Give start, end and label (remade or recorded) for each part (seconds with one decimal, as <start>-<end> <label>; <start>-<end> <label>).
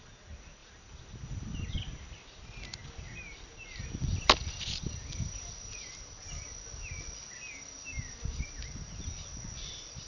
0.0-10.1 recorded